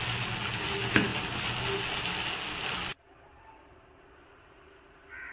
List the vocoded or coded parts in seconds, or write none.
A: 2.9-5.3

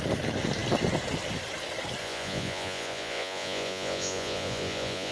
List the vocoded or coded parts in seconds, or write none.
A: 2.0-5.1

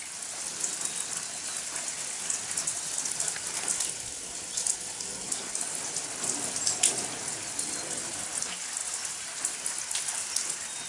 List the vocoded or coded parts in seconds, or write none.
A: none

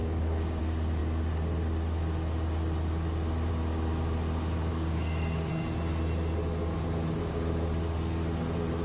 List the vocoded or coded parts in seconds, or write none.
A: 0.0-0.6; 4.7-5.5; 7.2-7.7

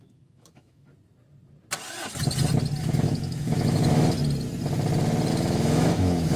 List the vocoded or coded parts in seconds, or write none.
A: 0.0-0.9; 2.8-4.2; 5.3-6.4

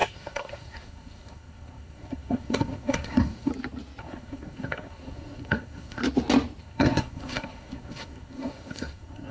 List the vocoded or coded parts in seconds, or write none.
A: 0.0-3.5; 4.0-6.0; 6.6-9.3

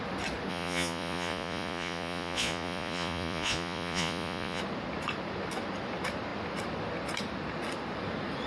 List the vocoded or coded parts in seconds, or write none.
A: 0.5-4.6